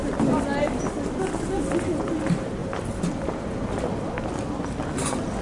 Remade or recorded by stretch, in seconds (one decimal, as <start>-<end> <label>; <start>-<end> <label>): 0.0-0.6 recorded; 0.6-1.5 remade; 1.5-2.6 recorded; 2.6-3.7 remade; 3.7-5.4 recorded